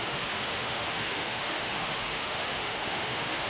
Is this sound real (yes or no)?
no